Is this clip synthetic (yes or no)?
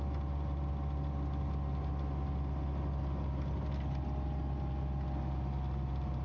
no